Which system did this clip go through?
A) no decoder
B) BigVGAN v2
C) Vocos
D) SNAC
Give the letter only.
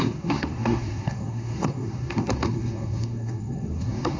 D